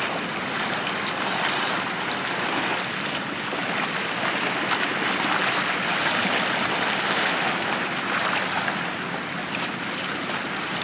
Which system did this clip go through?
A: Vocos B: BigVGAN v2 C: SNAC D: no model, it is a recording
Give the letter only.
D